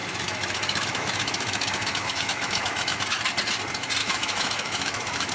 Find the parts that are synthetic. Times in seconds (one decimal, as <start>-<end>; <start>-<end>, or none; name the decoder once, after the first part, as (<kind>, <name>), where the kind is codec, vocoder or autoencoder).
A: 0.0-3.2 (autoencoder, DAC-VAE); 4.0-5.3